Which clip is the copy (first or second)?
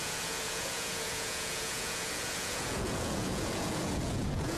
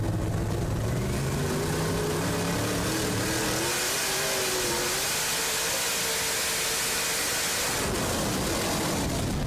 first